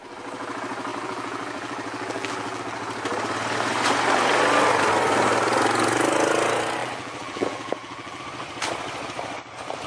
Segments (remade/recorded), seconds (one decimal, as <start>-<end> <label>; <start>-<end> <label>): 0.0-0.9 recorded; 0.9-2.6 remade; 2.6-6.8 recorded; 6.8-8.2 remade; 8.2-9.9 recorded